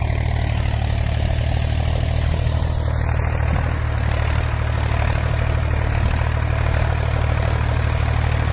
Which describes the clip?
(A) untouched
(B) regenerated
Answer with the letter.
A